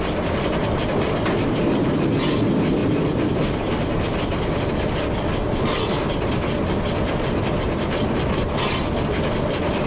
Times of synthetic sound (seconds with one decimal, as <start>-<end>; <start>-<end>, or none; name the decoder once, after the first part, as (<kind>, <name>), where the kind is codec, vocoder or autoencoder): none